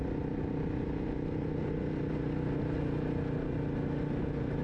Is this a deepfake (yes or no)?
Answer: no